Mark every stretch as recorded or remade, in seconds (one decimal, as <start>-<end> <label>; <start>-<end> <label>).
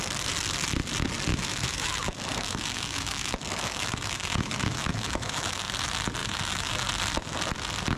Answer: 0.0-1.3 recorded; 1.3-5.7 remade; 5.7-6.2 recorded; 6.2-6.7 remade; 6.7-8.0 recorded